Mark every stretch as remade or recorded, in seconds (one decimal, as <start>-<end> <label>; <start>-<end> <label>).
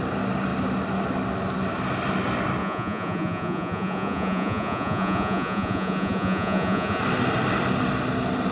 0.0-2.6 recorded; 2.6-7.0 remade; 7.0-8.5 recorded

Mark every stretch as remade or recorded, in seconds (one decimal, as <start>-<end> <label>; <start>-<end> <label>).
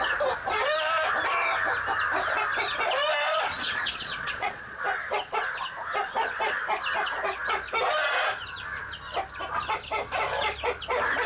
0.0-3.3 recorded; 3.3-4.8 remade; 4.8-11.3 recorded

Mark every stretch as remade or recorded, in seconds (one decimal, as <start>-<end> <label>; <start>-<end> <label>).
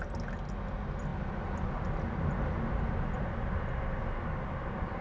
0.0-5.0 recorded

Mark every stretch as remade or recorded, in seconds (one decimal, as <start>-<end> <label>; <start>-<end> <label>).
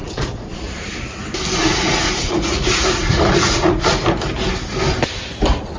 0.0-0.7 remade; 0.7-1.6 recorded; 1.6-3.9 remade; 3.9-5.8 recorded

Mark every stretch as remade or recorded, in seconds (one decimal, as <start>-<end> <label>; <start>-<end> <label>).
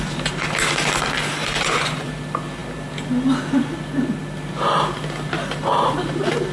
0.0-1.4 recorded; 1.4-2.1 remade; 2.1-6.5 recorded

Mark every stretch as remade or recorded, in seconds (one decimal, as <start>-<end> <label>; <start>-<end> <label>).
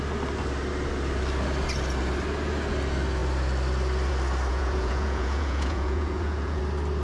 0.0-4.5 recorded; 4.5-6.6 remade; 6.6-7.0 recorded